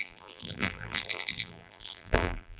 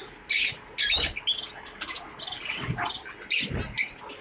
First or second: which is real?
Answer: second